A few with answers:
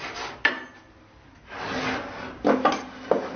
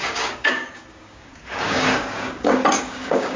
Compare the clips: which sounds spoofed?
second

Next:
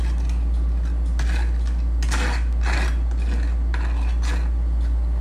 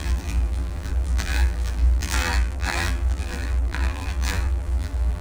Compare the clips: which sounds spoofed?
second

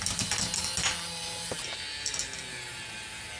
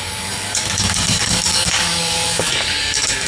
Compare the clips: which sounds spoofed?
second